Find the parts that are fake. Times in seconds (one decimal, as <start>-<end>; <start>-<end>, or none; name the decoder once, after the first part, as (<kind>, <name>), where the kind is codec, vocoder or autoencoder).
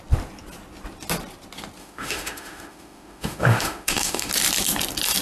1.8-4.3 (autoencoder, DAC-VAE)